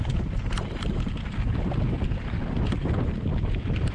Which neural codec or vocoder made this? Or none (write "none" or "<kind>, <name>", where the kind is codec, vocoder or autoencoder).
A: none